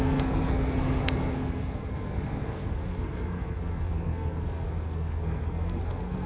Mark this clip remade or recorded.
remade